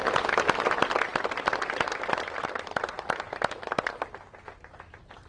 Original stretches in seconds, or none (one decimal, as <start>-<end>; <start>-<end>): 0.0-5.3